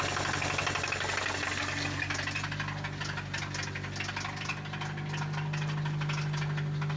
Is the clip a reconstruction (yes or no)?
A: no